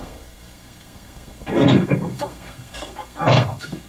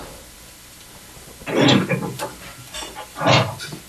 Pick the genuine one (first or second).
second